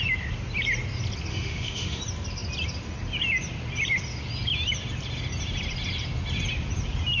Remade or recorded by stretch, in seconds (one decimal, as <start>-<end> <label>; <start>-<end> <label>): 0.0-1.3 recorded; 1.3-2.0 remade; 2.0-7.2 recorded